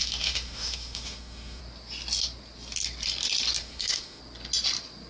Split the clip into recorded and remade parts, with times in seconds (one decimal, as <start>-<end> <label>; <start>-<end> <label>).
0.0-1.6 remade; 1.6-3.6 recorded; 3.6-4.2 remade; 4.2-5.1 recorded